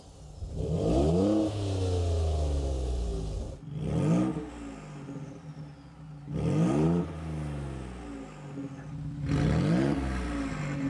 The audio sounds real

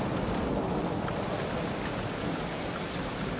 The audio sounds real